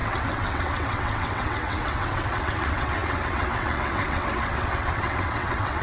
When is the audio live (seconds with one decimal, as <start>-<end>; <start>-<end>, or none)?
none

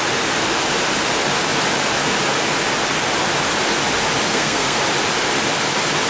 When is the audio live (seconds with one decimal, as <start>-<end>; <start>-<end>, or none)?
0.0-4.3; 4.8-6.1

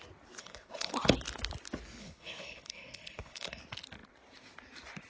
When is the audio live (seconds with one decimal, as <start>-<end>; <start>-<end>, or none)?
0.0-0.4; 0.9-2.0; 3.6-5.1

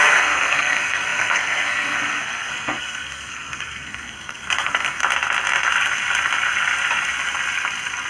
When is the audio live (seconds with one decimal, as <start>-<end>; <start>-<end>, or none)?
5.0-8.1

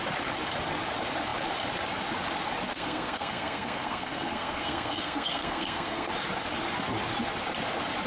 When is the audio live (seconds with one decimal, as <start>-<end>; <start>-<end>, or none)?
0.0-2.7; 6.1-8.1